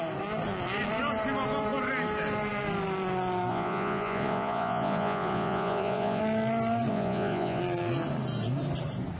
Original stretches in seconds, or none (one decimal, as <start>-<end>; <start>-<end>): 0.0-3.5; 6.2-6.9; 7.6-9.2